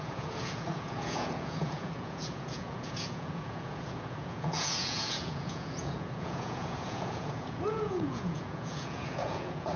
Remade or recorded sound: remade